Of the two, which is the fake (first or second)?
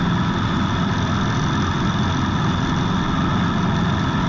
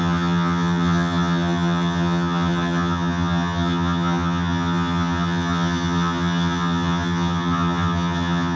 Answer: second